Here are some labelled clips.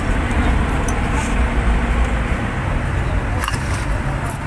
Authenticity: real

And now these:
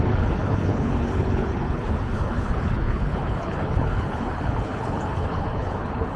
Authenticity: fake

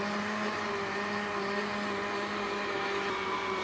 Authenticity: real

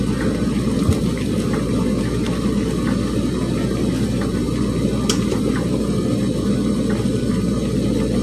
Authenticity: real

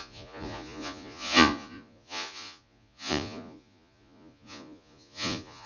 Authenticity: fake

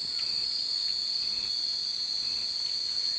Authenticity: real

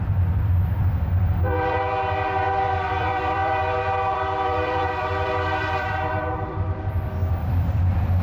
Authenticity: fake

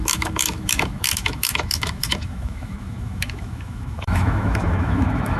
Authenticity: fake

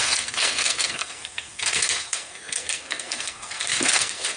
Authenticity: fake